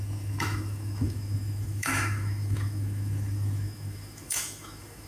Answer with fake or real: fake